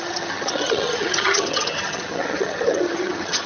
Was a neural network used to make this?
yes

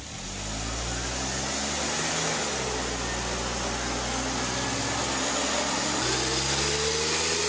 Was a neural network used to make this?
no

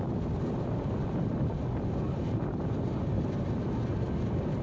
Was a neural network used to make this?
no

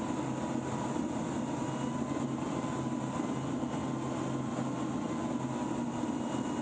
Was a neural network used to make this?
no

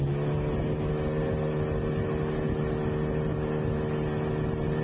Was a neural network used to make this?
no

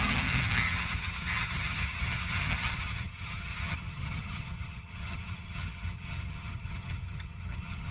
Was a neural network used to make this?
yes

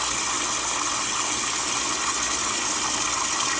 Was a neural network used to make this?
no